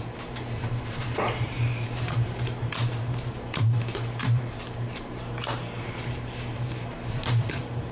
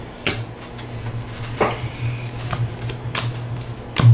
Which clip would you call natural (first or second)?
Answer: second